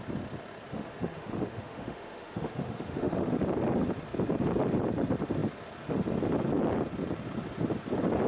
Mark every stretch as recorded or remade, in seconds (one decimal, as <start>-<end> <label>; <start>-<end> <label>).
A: 0.0-0.7 recorded; 0.7-3.4 remade; 3.4-8.3 recorded